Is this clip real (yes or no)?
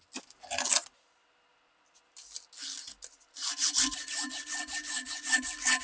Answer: yes